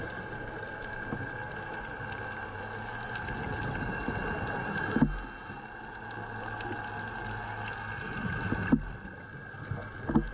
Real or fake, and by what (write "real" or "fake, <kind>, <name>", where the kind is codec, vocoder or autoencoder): real